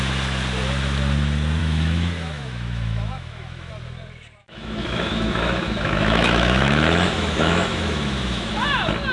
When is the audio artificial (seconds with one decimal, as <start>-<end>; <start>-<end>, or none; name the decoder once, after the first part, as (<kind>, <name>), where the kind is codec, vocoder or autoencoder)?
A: 1.6-3.7 (autoencoder, DAC-VAE); 4.4-8.5